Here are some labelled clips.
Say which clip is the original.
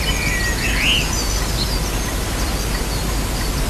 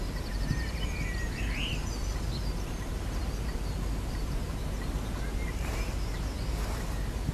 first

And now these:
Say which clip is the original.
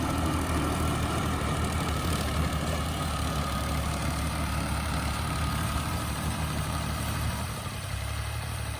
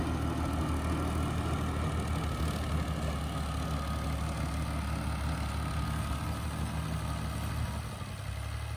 second